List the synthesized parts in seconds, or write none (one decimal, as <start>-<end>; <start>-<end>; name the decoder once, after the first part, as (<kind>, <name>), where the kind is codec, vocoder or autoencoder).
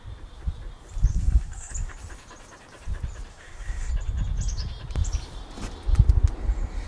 1.1-1.7 (codec, SNAC); 3.3-3.9